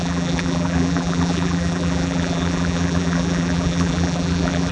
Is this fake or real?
fake